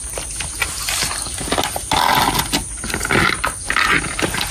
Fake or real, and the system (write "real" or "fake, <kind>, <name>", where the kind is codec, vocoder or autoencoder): real